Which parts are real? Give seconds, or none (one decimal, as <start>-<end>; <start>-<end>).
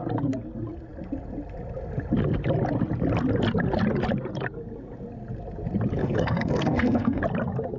0.0-6.0; 7.2-7.8